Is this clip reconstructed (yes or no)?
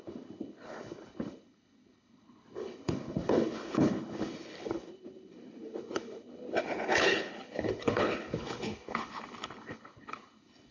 yes